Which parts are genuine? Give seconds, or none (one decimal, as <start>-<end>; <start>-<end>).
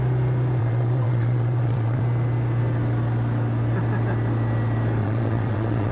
0.0-0.6; 2.0-5.0